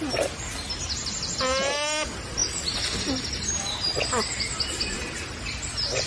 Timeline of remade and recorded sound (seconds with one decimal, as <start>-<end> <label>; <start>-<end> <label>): 0.0-6.1 recorded